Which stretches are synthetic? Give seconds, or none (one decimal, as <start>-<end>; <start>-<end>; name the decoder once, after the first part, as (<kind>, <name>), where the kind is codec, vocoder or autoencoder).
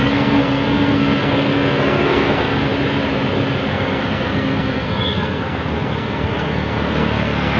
0.0-2.7 (codec, SNAC); 3.7-7.6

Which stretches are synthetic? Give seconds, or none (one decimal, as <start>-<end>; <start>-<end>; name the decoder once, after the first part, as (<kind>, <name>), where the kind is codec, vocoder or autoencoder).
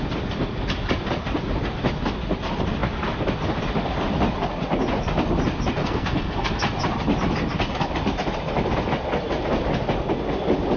5.8-6.5 (codec, SNAC)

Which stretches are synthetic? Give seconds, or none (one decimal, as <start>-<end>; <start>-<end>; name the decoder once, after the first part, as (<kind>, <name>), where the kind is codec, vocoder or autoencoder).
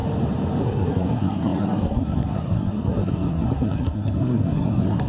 0.6-5.1 (codec, SNAC)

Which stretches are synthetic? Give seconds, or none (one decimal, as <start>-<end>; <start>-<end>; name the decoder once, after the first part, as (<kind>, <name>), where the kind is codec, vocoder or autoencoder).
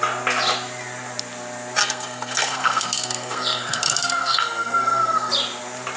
1.8-5.3 (codec, SNAC)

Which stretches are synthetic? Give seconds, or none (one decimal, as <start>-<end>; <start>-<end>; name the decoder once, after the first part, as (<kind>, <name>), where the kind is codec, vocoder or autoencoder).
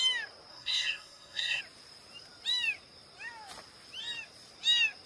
0.5-1.6 (codec, SNAC)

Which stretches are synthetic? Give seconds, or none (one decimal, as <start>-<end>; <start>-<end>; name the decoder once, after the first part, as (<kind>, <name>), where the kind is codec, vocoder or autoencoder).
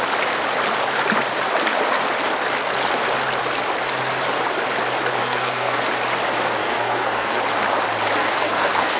5.2-5.8 (codec, SNAC); 6.6-7.4; 8.2-9.0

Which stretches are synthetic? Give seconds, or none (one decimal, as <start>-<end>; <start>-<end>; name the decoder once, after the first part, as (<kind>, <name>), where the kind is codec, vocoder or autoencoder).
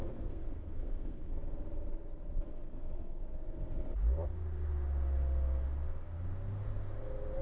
0.0-1.3 (codec, SNAC); 2.5-3.2